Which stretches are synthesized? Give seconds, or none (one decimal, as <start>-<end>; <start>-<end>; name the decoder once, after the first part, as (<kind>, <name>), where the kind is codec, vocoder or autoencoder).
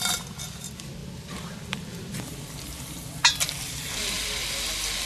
1.0-3.2 (vocoder, BigVGAN v2)